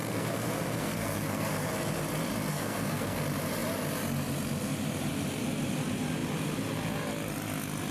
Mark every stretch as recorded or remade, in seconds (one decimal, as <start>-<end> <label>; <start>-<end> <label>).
0.0-1.7 remade; 1.7-2.5 recorded; 2.5-3.2 remade; 3.2-7.9 recorded